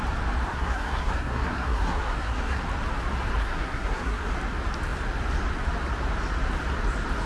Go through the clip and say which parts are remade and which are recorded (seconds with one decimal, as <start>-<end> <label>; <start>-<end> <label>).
0.0-0.5 recorded; 0.5-2.6 remade; 2.6-3.4 recorded; 3.4-4.3 remade; 4.3-7.3 recorded